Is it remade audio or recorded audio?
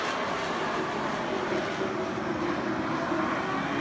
recorded